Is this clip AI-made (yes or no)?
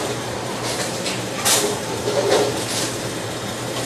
yes